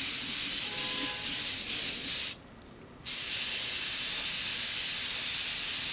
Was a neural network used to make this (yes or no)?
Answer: no